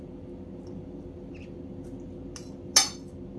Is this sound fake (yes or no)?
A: no